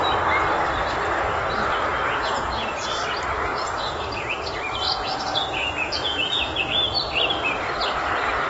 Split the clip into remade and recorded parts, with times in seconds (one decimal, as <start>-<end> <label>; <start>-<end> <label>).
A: 0.0-1.9 recorded; 1.9-3.0 remade; 3.0-3.5 recorded; 3.5-4.2 remade; 4.2-5.3 recorded; 5.3-6.6 remade; 6.6-8.5 recorded